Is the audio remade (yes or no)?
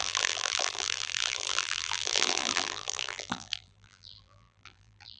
yes